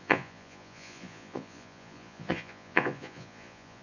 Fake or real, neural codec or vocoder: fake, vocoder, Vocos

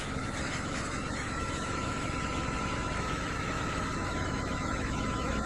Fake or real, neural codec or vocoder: fake, autoencoder, DAC-VAE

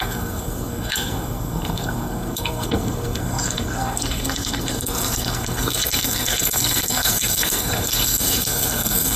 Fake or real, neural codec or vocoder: fake, codec, SNAC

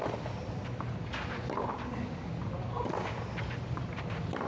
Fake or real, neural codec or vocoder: real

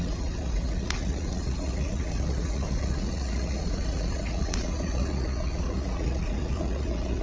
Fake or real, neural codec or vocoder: fake, vocoder, Vocos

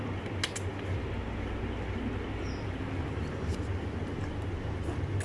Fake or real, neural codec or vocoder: real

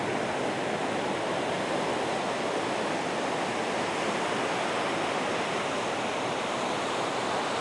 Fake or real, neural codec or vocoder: real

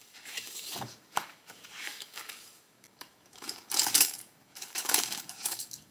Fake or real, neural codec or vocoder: fake, codec, DAC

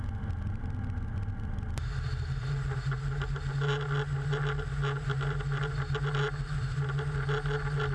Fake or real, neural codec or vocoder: real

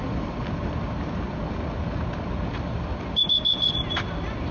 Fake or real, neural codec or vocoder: real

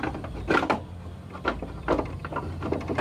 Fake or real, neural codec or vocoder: real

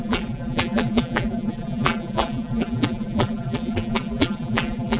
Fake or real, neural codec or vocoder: fake, vocoder, BigVGAN v2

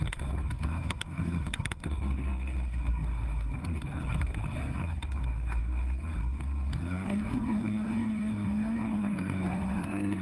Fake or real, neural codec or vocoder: fake, codec, SNAC